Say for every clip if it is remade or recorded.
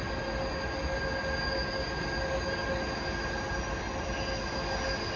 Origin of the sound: recorded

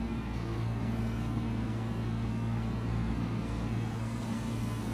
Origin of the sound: remade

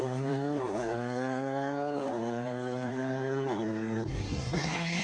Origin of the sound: remade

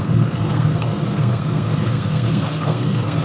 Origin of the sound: remade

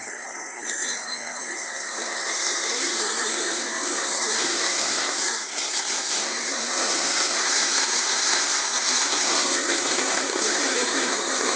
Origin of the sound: remade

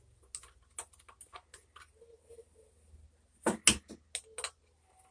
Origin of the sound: recorded